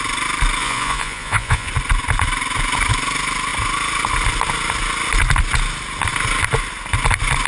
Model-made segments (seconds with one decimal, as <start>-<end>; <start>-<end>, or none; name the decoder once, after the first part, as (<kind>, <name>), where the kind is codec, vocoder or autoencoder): 0.6-1.7 (vocoder, Vocos)